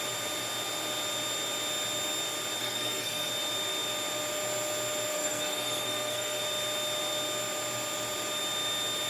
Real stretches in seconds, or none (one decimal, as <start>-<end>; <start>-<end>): 0.0-2.6; 3.3-5.1; 6.4-9.1